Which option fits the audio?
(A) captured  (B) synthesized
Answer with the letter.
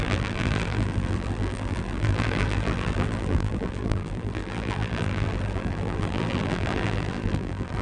B